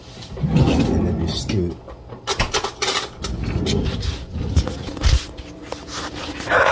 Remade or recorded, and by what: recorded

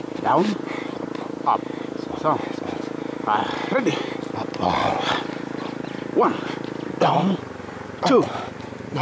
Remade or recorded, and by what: recorded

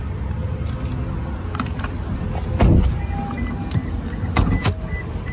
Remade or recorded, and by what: recorded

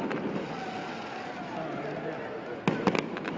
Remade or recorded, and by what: recorded